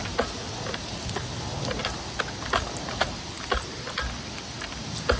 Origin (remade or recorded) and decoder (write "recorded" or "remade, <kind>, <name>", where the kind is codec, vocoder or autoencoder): recorded